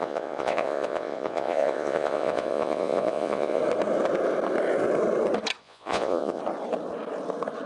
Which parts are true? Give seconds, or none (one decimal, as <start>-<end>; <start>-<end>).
3.6-5.6; 6.4-7.7